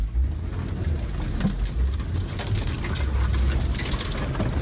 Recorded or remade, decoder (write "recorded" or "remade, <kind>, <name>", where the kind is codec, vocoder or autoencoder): recorded